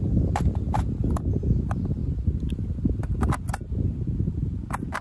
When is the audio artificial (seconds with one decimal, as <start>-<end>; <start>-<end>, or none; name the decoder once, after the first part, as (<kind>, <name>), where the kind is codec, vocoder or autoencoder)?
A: none